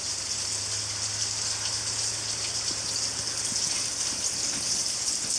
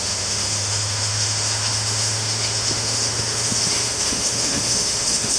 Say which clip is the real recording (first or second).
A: first